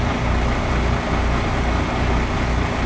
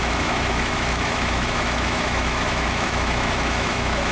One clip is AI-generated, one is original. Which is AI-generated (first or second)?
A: second